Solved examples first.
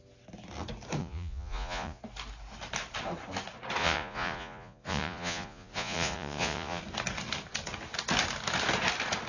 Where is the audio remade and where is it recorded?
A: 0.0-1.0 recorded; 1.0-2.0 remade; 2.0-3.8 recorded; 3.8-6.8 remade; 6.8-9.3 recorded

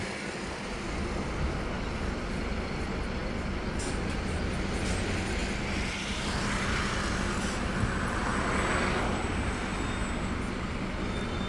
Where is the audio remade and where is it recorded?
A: 0.0-11.5 recorded

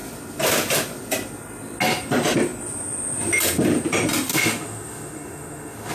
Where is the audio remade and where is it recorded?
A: 0.0-4.3 recorded; 4.3-5.9 remade

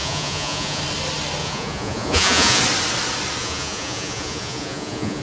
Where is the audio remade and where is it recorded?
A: 0.0-0.8 remade; 0.8-1.4 recorded; 1.4-2.6 remade; 2.6-3.4 recorded; 3.4-5.2 remade

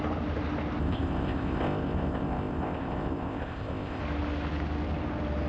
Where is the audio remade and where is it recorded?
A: 0.0-0.8 recorded; 0.8-4.0 remade; 4.0-5.5 recorded

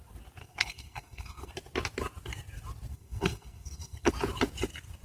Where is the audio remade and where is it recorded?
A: 0.0-0.4 recorded; 0.4-1.5 remade; 1.5-2.9 recorded; 2.9-4.1 remade; 4.1-5.0 recorded

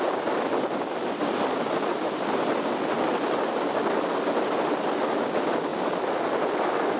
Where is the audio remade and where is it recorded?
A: 0.0-7.0 recorded